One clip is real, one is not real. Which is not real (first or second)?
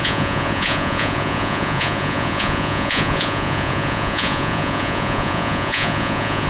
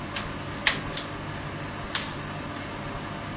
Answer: first